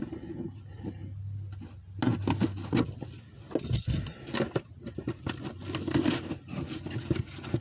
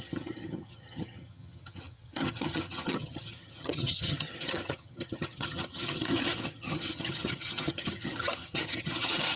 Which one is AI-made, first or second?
second